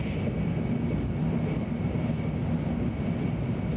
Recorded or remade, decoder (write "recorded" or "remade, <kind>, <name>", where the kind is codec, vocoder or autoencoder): recorded